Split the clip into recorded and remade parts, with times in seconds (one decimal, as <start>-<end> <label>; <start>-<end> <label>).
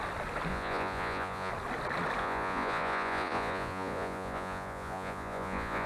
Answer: 0.0-0.5 recorded; 0.5-1.5 remade; 1.5-2.2 recorded; 2.2-5.9 remade